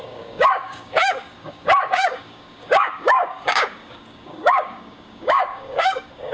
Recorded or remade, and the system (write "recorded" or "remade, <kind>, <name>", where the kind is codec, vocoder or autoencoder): remade, codec, DAC